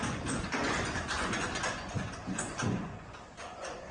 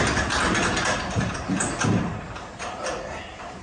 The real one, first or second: second